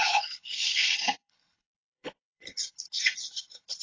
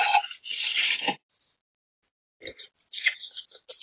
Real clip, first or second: second